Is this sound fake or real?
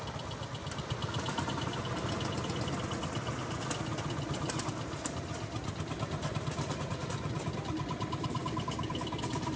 real